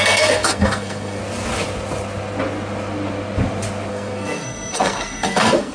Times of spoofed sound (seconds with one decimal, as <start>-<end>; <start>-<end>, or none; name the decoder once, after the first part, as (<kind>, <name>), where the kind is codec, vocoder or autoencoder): 0.0-1.2 (codec, SNAC); 3.9-5.7